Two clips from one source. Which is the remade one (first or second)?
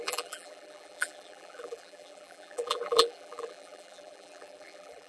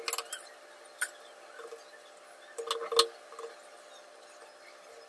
first